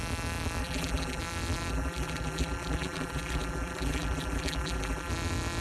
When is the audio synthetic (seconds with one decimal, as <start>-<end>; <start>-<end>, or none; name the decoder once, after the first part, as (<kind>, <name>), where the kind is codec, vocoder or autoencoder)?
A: 0.6-1.2 (vocoder, BigVGAN v2); 1.7-5.1